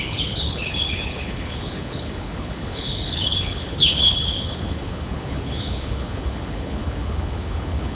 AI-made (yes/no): yes